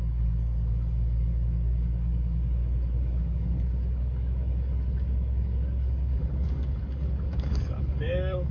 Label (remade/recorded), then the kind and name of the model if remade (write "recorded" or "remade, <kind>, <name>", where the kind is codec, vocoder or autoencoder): remade, codec, DAC